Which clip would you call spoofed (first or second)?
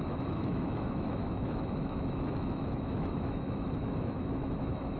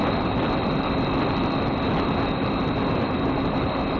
first